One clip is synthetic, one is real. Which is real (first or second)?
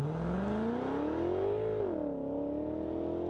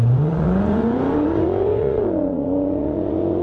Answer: first